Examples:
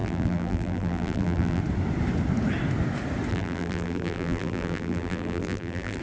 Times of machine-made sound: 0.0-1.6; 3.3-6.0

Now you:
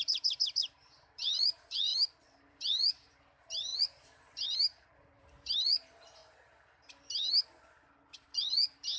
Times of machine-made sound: 0.0-1.9; 2.5-6.2; 8.2-9.0